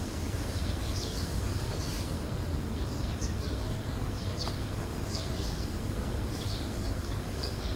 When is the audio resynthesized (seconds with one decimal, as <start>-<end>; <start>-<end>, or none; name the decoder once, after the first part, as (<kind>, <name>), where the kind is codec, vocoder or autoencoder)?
0.0-7.8 (codec, SNAC)